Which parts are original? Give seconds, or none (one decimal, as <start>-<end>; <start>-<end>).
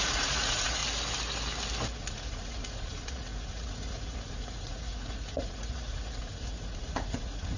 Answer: 0.8-2.0